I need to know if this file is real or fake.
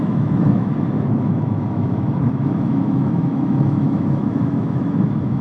fake